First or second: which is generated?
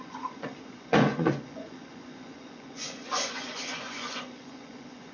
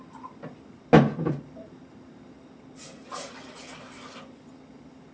first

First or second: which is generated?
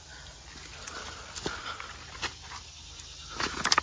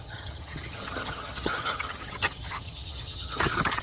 second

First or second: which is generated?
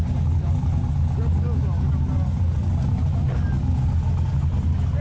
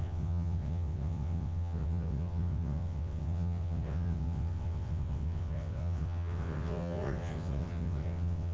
second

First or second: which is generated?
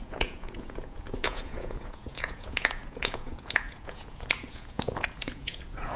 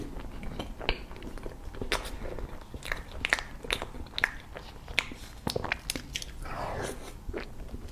first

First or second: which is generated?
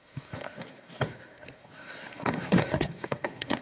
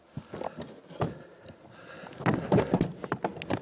first